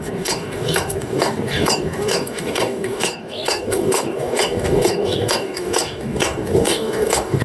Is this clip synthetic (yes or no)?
yes